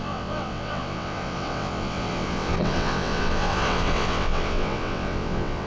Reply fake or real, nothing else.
fake